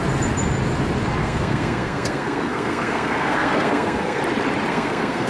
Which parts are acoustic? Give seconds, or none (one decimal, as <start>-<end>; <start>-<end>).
0.0-1.2; 4.2-4.7